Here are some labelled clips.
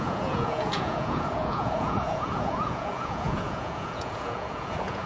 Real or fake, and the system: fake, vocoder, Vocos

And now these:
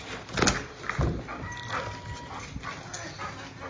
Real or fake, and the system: real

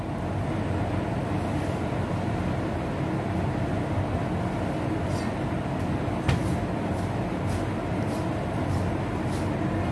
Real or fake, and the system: real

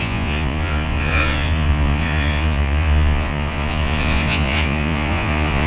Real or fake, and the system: fake, vocoder, Vocos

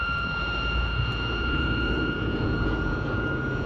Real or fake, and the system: fake, vocoder, Vocos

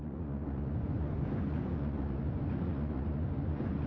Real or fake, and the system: fake, vocoder, Vocos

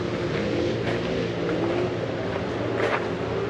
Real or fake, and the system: real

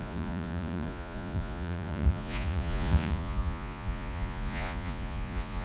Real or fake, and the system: fake, vocoder, Vocos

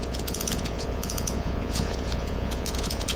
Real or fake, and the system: fake, vocoder, Vocos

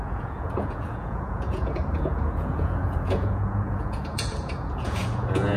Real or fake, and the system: fake, vocoder, Vocos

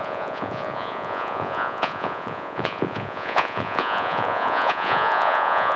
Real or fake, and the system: fake, vocoder, Vocos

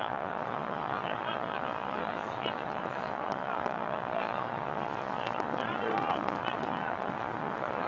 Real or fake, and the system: fake, vocoder, Vocos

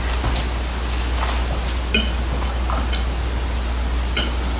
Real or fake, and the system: real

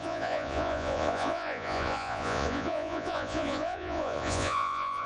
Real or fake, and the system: fake, vocoder, Vocos